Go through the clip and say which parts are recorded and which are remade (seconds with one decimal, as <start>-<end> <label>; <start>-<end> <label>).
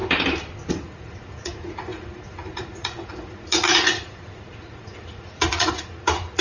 0.0-0.7 recorded; 0.7-6.4 remade